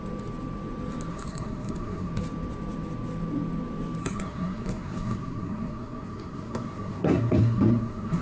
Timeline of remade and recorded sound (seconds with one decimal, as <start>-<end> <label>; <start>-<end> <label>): 0.0-1.1 recorded; 1.1-2.1 remade; 2.1-4.0 recorded; 4.0-8.2 remade